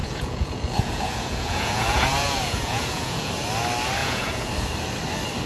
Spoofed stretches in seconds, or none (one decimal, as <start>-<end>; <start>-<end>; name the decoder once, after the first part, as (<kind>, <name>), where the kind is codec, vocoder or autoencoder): 0.0-3.3 (vocoder, Vocos); 4.0-4.5